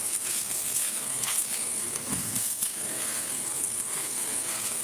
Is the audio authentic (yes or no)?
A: no